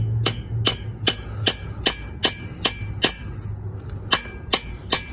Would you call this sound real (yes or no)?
yes